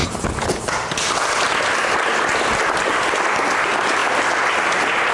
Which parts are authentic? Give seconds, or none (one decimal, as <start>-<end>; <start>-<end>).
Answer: 0.0-5.1